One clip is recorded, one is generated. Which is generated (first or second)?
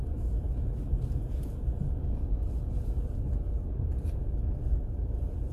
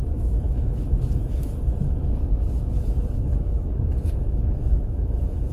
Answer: second